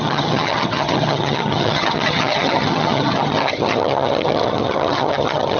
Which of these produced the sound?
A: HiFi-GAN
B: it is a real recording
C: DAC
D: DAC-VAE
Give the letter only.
A